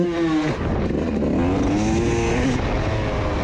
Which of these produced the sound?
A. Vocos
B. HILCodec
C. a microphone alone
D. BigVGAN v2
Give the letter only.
C